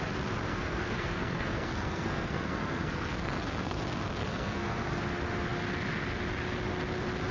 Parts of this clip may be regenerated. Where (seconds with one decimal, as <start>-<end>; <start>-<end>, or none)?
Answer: 0.5-3.8; 4.2-5.0